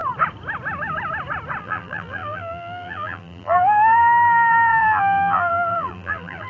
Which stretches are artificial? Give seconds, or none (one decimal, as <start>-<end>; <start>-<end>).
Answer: 1.6-6.5

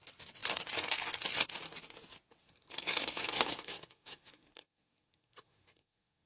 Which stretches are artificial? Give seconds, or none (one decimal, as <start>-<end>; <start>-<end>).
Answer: 2.4-6.3

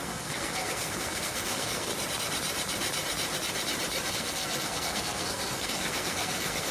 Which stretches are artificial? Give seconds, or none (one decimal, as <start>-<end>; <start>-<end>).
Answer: 0.0-1.9; 4.1-6.7

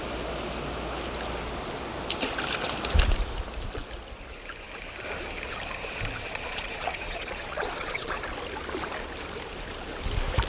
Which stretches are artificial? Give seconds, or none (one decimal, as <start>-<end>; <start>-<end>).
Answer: 6.3-8.2

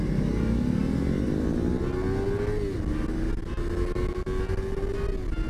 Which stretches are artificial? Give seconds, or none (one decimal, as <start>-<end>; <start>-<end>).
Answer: none

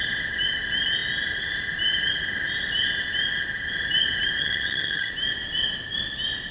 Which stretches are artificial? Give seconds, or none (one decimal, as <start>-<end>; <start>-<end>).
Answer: 4.4-5.1

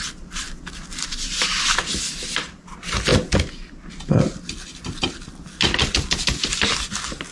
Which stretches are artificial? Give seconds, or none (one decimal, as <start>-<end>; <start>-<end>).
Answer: none

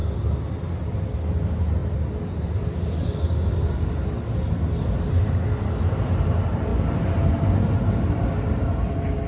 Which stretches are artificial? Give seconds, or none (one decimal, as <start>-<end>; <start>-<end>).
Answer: none